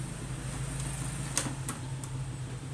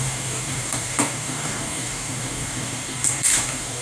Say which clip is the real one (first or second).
first